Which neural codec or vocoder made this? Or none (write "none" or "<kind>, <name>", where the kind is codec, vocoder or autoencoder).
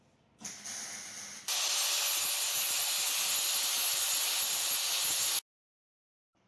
none